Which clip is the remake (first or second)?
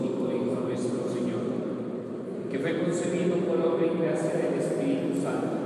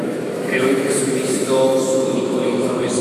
second